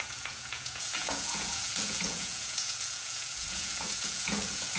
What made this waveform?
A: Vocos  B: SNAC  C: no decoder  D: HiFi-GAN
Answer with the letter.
A